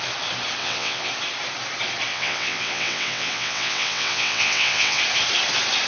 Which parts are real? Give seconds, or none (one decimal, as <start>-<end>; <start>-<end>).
0.0-0.6; 1.1-2.1; 5.0-5.9